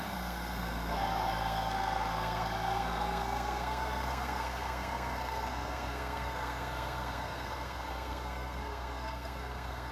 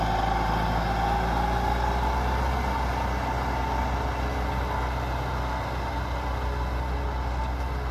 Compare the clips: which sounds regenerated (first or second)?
first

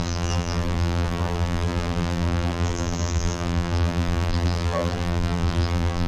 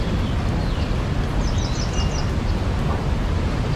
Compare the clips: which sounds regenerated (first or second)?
first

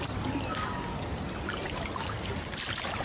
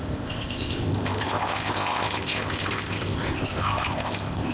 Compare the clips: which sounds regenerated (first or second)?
second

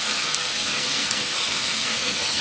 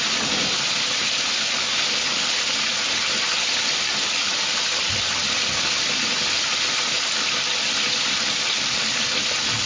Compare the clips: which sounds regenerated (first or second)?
first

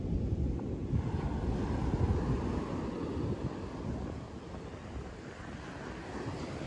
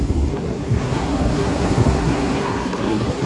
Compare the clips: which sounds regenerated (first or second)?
second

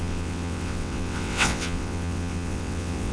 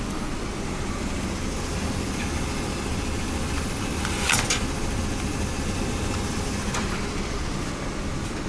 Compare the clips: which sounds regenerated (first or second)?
first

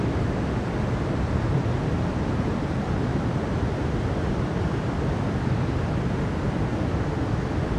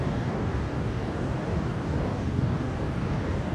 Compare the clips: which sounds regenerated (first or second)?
second